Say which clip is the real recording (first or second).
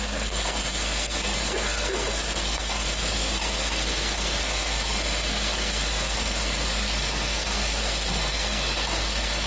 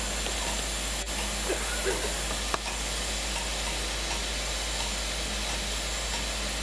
second